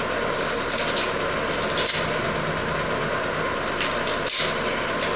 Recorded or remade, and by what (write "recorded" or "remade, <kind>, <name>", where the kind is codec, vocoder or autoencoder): recorded